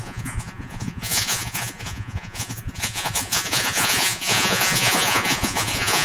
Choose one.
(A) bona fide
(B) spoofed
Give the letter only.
B